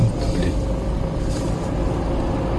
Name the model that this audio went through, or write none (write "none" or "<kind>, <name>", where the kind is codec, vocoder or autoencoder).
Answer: none